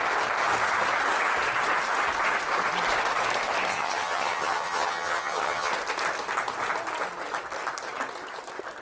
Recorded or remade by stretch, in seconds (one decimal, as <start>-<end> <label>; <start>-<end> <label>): 0.0-3.7 recorded; 3.7-5.7 remade; 5.7-8.8 recorded